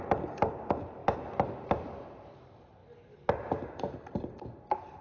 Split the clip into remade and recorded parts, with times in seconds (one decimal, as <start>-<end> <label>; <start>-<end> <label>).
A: 0.0-1.0 remade; 1.0-1.8 recorded; 1.8-2.8 remade; 2.8-3.4 recorded; 3.4-5.0 remade